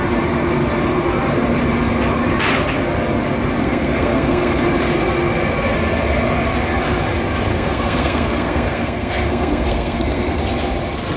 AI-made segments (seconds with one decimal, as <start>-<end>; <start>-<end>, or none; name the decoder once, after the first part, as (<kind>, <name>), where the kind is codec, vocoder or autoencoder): 3.6-4.6 (codec, SNAC); 7.5-10.4